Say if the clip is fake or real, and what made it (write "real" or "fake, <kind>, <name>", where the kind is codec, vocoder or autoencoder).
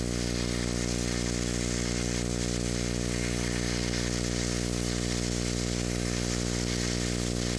real